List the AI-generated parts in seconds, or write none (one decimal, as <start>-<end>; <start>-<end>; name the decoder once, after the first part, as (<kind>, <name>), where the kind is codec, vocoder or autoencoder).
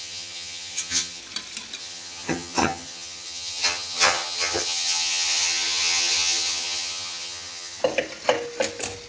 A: 0.0-1.2 (vocoder, HiFi-GAN); 1.8-7.8